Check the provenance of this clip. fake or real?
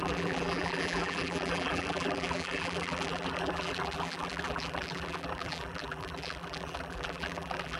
fake